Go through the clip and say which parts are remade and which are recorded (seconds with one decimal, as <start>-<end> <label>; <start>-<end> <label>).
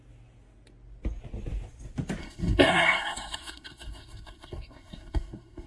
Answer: 0.0-2.2 recorded; 2.2-5.7 remade